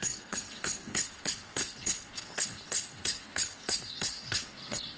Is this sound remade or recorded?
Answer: remade